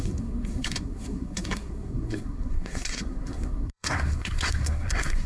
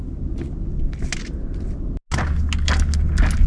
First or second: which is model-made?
first